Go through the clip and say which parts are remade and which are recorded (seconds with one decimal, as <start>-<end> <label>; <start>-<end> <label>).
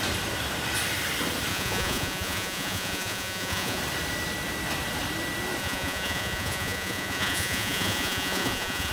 0.0-1.5 recorded; 1.5-3.8 remade; 3.8-5.6 recorded; 5.6-8.9 remade